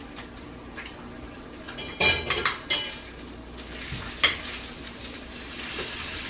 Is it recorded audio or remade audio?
recorded